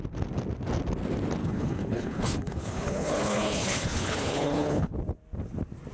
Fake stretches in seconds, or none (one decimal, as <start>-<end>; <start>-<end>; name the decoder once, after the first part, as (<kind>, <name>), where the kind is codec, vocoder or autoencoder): 1.4-4.9 (codec, HILCodec)